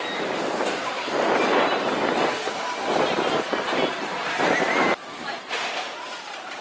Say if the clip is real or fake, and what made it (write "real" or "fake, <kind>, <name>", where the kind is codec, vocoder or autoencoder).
fake, vocoder, BigVGAN v2